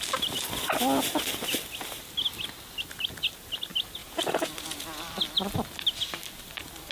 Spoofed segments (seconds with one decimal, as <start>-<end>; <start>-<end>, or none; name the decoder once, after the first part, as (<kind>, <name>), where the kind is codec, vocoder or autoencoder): 4.0-4.5 (vocoder, Vocos)